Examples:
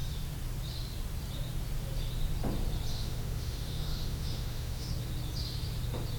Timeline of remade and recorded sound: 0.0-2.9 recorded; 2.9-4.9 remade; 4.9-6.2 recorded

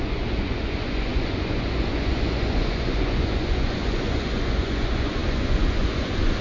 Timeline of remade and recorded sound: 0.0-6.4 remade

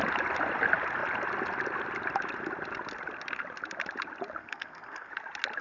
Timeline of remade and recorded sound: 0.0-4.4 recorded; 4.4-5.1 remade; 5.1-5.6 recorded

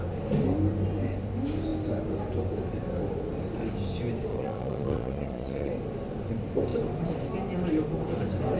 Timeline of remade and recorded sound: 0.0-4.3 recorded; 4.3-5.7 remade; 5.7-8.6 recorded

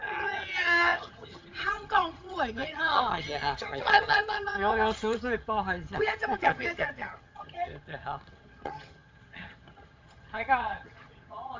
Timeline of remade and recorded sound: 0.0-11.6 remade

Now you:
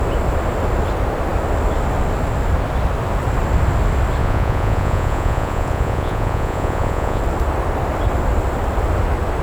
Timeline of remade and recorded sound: 0.0-4.2 recorded; 4.2-7.2 remade; 7.2-9.4 recorded

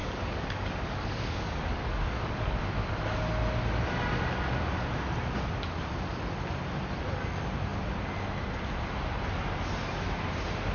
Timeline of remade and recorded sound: 0.0-2.6 remade; 2.6-10.7 recorded